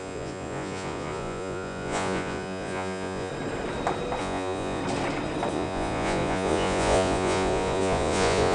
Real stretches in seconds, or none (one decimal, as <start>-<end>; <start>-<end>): 3.3-4.2; 4.8-5.5